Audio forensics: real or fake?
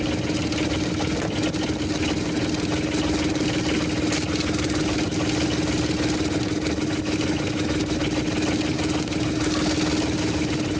real